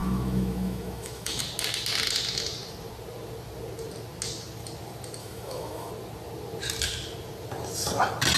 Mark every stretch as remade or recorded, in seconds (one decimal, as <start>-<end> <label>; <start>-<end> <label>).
0.0-1.4 remade; 1.4-5.2 recorded; 5.2-5.9 remade; 5.9-8.4 recorded